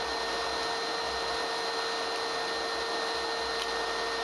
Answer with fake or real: real